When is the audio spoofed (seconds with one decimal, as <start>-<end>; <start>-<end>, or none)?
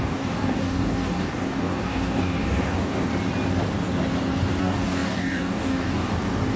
0.0-3.1; 4.6-6.6